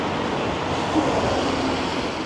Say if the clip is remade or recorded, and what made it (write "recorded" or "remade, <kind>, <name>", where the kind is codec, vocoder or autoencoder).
recorded